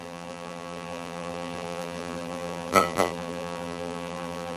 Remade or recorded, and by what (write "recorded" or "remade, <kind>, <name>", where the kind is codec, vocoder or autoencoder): remade, vocoder, BigVGAN v2